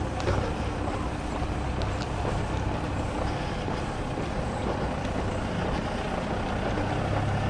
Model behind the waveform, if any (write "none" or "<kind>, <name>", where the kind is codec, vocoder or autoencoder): none